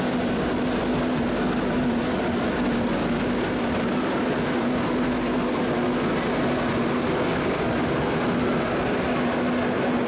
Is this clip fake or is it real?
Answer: real